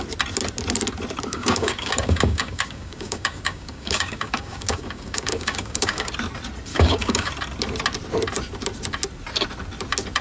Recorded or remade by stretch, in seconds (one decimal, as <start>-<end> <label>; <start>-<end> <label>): 0.0-1.3 recorded; 1.3-6.1 remade; 6.1-6.7 recorded; 6.7-7.3 remade; 7.3-10.2 recorded